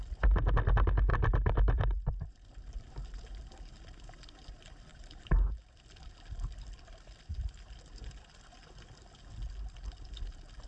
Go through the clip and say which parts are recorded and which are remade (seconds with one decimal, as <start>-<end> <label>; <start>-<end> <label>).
0.0-1.1 recorded; 1.1-3.2 remade; 3.2-4.9 recorded; 4.9-5.7 remade; 5.7-10.7 recorded